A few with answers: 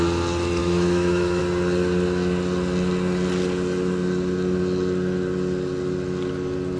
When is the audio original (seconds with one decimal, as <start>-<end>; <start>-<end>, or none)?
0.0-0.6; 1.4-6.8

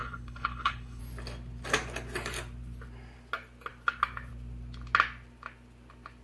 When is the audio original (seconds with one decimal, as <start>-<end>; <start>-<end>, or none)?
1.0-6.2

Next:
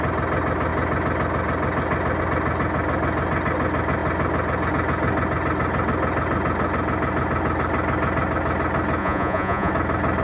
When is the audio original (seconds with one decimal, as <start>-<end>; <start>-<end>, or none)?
0.0-9.0; 9.7-10.2

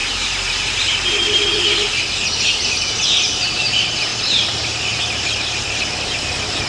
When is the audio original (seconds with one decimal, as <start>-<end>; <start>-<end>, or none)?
2.4-6.7

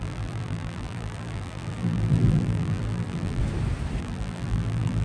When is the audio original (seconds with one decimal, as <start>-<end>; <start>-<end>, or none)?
3.4-4.0

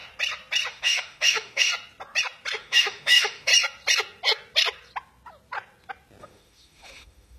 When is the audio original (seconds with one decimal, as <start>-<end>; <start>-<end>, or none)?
0.0-0.7; 1.7-2.6; 3.5-6.2